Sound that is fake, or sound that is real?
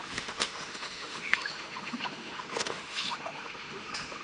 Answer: fake